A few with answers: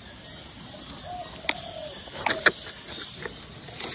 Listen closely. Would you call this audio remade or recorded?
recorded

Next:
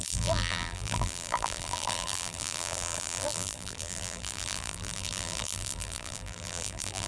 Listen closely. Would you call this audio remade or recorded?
remade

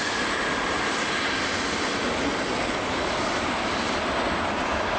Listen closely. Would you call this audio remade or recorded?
recorded